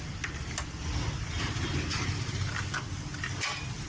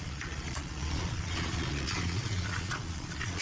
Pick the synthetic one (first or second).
second